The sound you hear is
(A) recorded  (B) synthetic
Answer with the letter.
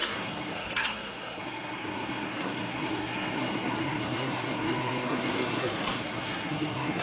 B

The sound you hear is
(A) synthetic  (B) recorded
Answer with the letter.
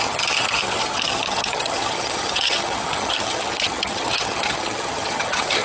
A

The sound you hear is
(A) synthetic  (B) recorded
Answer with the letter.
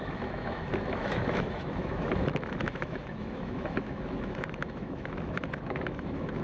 A